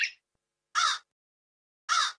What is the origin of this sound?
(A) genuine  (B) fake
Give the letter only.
A